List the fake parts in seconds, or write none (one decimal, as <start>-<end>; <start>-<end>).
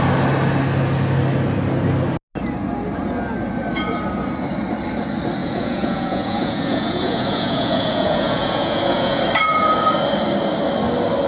5.4-9.2